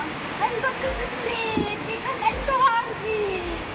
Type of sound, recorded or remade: remade